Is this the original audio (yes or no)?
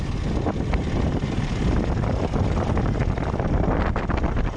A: yes